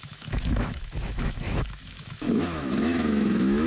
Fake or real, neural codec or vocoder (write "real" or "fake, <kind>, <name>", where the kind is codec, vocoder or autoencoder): fake, autoencoder, DAC-VAE